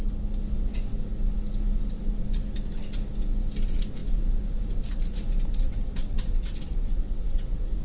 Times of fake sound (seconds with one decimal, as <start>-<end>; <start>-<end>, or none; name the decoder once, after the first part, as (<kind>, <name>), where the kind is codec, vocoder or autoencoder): 6.0-7.8 (vocoder, WaveNeXt)